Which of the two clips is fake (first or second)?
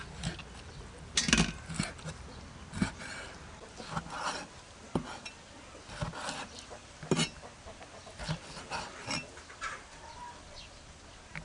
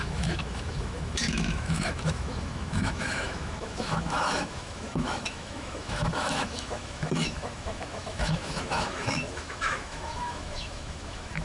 second